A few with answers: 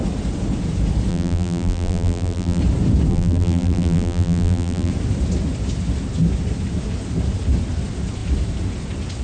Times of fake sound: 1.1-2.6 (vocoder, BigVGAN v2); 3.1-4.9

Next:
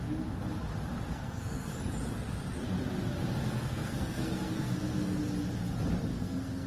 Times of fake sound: 1.1-1.7 (codec, SNAC); 3.4-5.2; 6.1-6.7

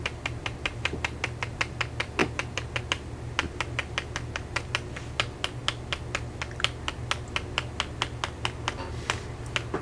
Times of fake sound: none

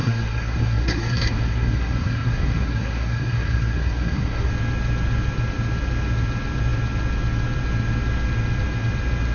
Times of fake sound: 0.0-4.5 (codec, SNAC)

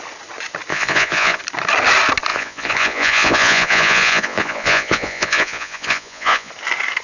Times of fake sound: 0.7-1.4 (vocoder, Vocos); 2.3-6.5